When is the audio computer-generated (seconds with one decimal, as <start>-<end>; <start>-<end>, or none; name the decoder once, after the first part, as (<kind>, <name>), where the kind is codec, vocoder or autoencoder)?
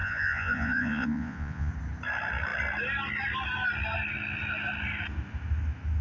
0.0-1.7 (vocoder, Vocos)